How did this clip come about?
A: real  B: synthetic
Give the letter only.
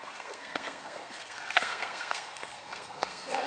B